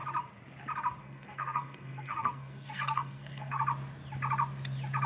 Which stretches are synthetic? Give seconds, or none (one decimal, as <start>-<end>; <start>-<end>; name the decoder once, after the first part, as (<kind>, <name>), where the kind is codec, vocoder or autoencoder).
1.0-3.6 (codec, SNAC)